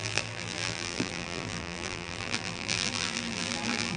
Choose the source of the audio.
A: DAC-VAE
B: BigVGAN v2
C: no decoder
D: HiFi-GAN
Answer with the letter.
B